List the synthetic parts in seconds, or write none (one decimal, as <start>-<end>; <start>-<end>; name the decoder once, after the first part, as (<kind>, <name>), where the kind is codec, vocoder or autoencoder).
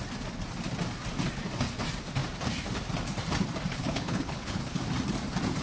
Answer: 3.7-4.8 (codec, HILCodec)